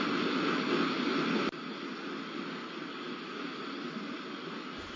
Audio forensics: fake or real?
real